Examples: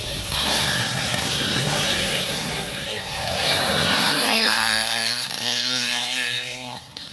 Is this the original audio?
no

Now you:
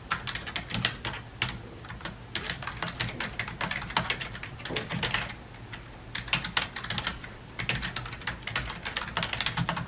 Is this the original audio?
yes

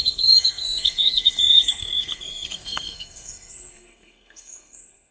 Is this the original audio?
no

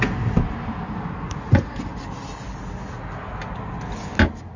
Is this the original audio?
yes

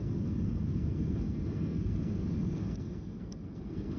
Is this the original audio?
no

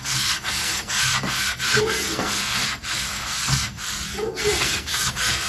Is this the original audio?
no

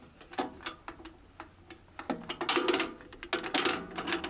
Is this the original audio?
yes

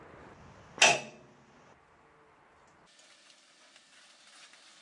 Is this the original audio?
yes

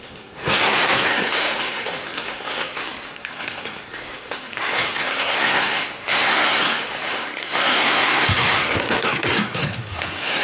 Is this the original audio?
no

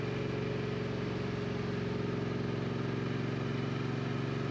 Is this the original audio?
yes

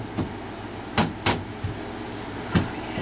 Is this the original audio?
yes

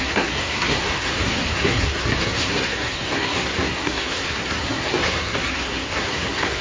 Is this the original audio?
no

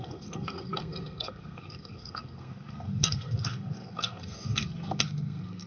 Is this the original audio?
no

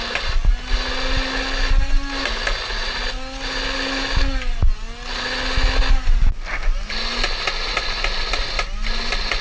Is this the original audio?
yes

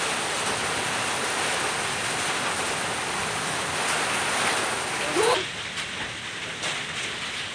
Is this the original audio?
yes